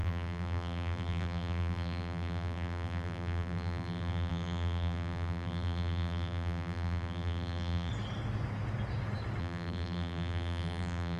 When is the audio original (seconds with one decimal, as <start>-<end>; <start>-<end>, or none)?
7.9-9.4